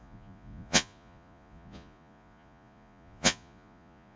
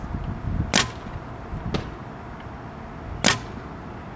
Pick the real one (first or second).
second